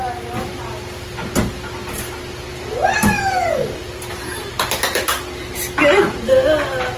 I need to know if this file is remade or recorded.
recorded